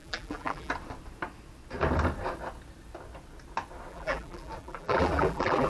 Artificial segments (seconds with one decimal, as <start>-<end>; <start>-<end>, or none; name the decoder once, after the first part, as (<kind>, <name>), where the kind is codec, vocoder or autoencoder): 0.0-0.7 (vocoder, BigVGAN v2); 3.9-5.7